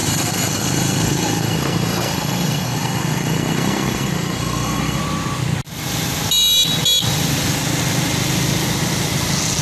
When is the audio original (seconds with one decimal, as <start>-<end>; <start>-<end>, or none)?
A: 5.0-9.6